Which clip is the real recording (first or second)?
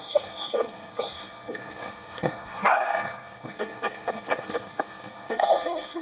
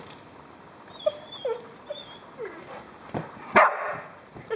second